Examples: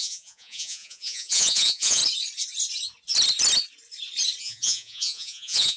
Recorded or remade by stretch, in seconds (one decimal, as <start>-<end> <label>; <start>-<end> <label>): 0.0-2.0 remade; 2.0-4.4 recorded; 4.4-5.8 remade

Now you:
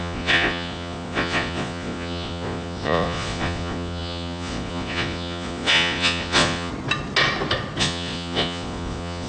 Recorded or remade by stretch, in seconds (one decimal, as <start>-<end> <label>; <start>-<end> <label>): 0.0-6.7 remade; 6.7-7.8 recorded; 7.8-9.3 remade

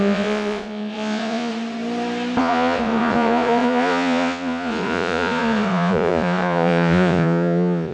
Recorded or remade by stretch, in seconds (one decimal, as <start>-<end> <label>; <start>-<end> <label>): 0.0-1.5 remade; 1.5-2.4 recorded; 2.4-7.9 remade

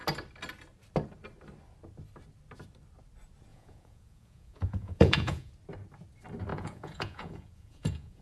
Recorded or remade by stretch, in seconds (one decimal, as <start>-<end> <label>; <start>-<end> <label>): 0.0-3.5 recorded; 3.5-5.5 remade; 5.5-6.5 recorded; 6.5-8.2 remade